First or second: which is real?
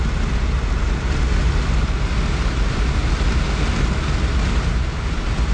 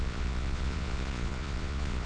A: first